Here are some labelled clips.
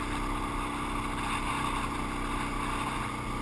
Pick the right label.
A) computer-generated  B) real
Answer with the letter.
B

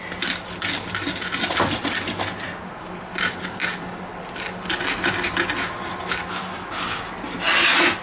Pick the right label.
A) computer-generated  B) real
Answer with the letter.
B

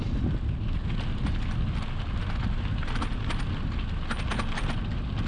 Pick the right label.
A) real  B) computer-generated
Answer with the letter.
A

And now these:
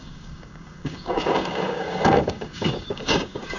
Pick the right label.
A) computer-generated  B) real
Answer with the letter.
A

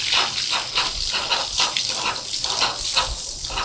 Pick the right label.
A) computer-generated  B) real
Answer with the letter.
B